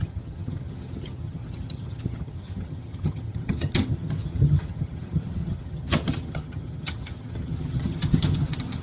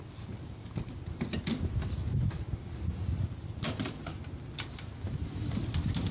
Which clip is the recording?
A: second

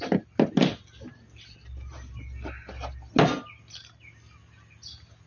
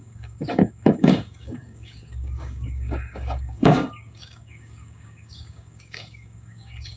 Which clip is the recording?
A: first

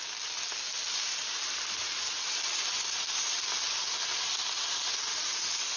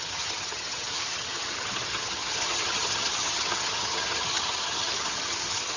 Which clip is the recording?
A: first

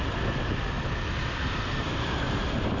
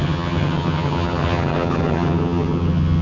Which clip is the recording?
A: first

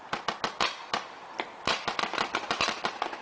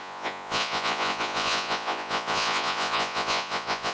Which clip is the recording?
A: first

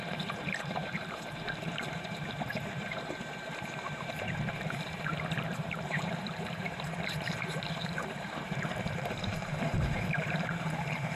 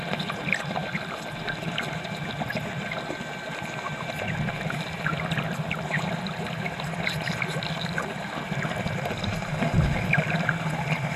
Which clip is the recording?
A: second